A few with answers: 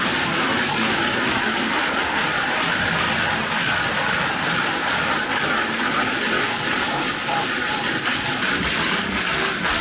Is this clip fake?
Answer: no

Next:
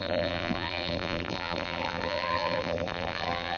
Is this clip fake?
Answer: yes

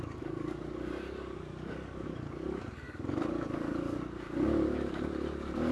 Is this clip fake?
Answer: yes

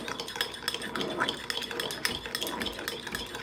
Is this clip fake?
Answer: no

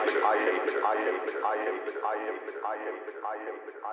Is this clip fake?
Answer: no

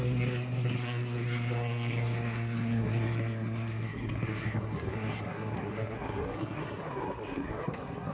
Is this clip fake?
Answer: yes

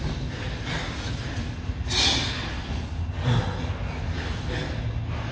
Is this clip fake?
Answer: no